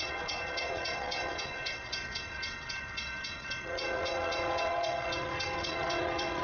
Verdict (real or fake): fake